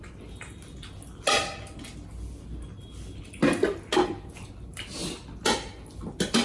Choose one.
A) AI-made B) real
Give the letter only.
B